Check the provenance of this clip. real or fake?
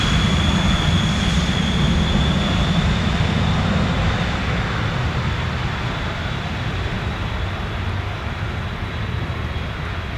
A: real